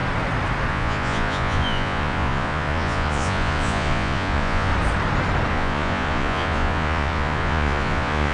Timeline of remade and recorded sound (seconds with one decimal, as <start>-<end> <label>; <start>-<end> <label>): 0.0-0.7 recorded; 0.7-4.7 remade; 4.7-5.5 recorded; 5.5-8.3 remade